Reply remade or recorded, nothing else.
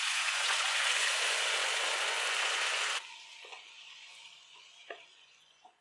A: remade